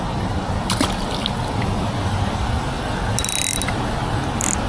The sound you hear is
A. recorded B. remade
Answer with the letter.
A